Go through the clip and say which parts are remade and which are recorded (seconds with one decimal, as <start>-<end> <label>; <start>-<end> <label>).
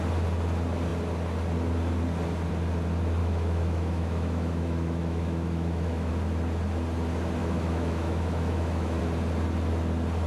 0.0-3.2 recorded; 3.2-6.1 remade; 6.1-7.4 recorded; 7.4-9.0 remade; 9.0-10.3 recorded